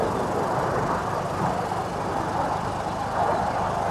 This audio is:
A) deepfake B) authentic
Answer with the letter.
B